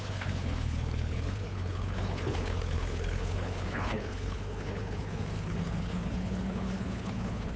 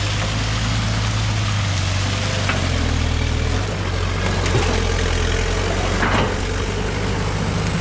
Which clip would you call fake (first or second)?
first